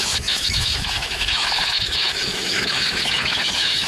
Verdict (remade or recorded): remade